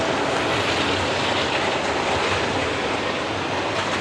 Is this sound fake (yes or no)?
no